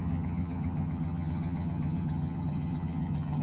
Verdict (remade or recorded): remade